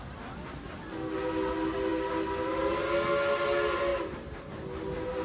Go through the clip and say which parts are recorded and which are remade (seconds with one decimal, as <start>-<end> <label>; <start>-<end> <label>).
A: 0.0-5.2 recorded